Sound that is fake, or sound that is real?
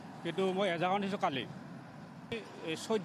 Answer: real